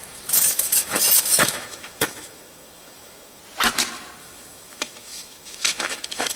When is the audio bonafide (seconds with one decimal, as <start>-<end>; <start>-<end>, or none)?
3.4-4.2